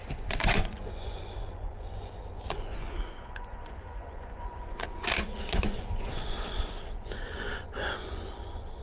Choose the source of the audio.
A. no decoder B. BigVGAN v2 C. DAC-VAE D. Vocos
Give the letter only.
D